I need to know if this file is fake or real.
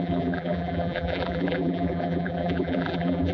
fake